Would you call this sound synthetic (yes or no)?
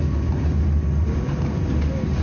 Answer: no